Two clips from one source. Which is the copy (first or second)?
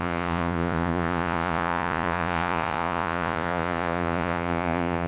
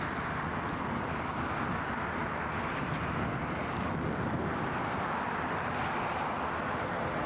first